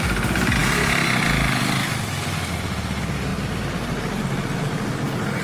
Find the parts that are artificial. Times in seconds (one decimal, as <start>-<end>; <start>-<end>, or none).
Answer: none